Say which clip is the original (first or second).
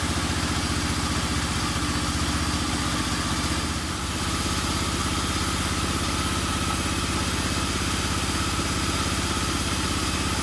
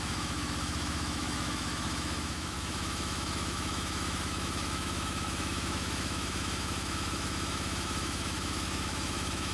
first